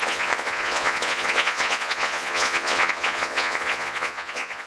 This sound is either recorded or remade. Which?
remade